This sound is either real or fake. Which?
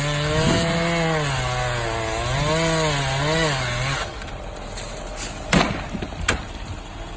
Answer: real